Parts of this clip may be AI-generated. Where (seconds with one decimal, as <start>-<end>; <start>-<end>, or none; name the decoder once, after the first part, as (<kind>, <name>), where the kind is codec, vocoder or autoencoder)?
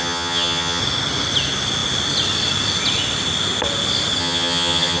0.0-0.8 (vocoder, HiFi-GAN); 4.2-5.0